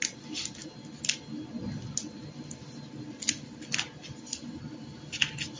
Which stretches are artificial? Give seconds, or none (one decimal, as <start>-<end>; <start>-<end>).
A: none